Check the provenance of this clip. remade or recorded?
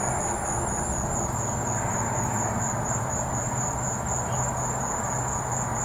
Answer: recorded